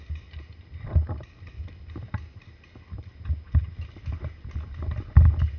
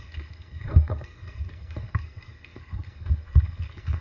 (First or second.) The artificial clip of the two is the second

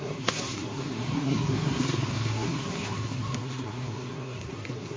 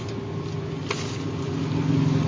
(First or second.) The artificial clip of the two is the first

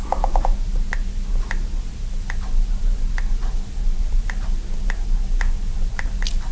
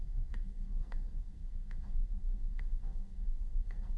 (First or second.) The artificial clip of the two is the second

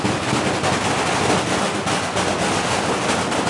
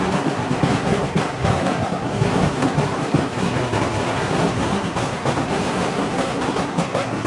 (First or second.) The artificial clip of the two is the second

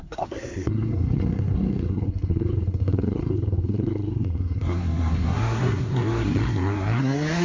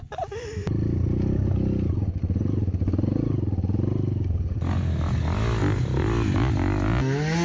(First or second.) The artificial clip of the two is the first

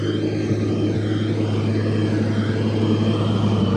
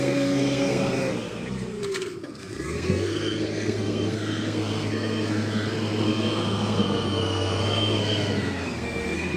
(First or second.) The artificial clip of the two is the second